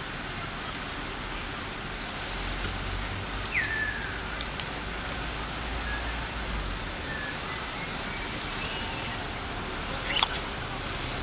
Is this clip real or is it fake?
real